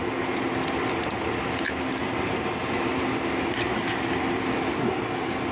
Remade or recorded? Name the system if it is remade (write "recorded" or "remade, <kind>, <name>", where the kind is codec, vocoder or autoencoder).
recorded